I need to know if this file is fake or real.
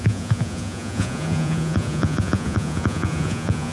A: fake